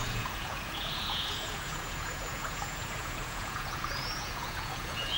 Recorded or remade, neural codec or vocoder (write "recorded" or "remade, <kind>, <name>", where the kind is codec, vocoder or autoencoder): remade, vocoder, Vocos